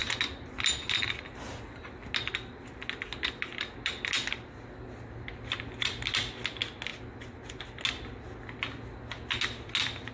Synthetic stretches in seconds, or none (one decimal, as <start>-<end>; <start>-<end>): none